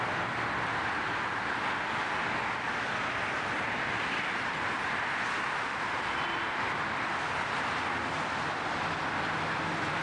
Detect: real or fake real